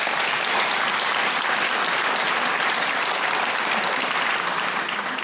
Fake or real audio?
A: fake